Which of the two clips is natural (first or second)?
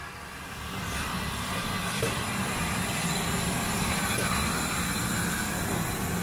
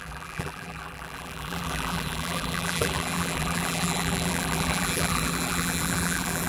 first